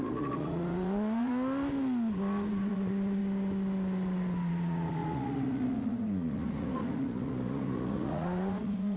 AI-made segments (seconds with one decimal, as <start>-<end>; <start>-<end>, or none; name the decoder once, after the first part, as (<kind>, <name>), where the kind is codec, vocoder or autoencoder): 0.0-1.3 (vocoder, Vocos); 2.5-3.2; 4.5-9.0